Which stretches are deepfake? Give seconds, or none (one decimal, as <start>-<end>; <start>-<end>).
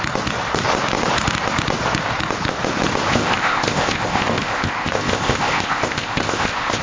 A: 3.1-6.8